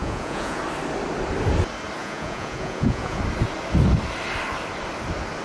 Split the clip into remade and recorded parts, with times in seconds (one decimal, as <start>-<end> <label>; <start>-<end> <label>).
0.0-0.6 remade; 0.6-2.0 recorded; 2.0-3.2 remade; 3.2-5.4 recorded